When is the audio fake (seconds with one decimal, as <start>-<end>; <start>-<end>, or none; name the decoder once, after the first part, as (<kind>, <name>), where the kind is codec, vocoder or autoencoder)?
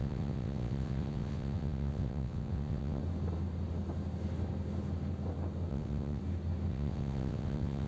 0.0-3.0 (vocoder, WaveNeXt); 5.7-6.2; 6.7-7.9